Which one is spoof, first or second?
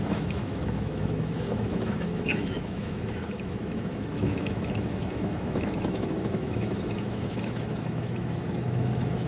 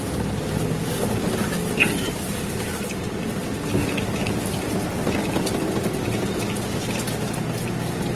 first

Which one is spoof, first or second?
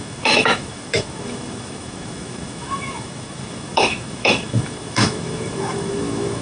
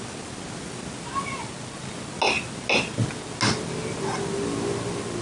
first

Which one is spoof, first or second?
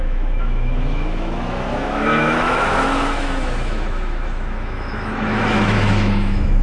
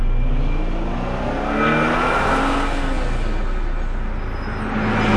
first